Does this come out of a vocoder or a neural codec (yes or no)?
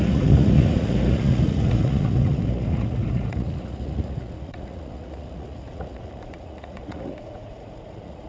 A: yes